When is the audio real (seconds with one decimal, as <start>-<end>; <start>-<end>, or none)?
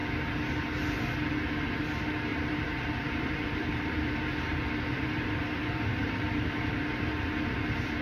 0.0-2.3; 7.1-8.0